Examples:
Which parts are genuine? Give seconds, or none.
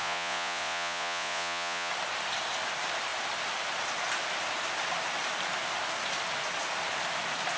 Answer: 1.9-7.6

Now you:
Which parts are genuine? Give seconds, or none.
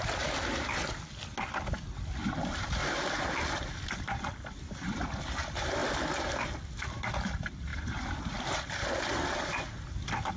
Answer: 0.0-2.8; 5.2-5.8; 6.3-7.7; 8.6-10.4